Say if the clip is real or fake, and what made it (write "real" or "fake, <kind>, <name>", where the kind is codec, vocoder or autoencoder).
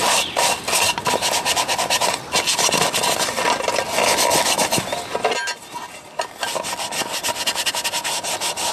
real